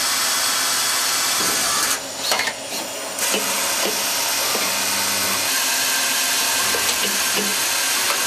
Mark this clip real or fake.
real